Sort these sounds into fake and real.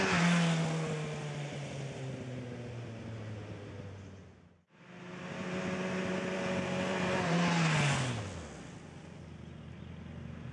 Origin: real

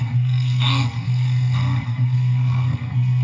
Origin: fake